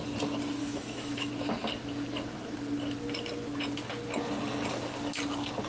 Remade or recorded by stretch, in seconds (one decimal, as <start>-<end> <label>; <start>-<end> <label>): 0.0-0.6 recorded; 0.6-1.3 remade; 1.3-5.7 recorded